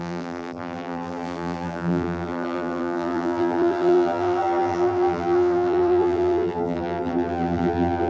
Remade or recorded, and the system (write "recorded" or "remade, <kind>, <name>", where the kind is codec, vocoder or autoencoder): remade, vocoder, BigVGAN v2